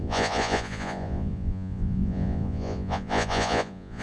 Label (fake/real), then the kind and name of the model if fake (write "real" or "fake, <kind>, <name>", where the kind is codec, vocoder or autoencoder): fake, vocoder, Vocos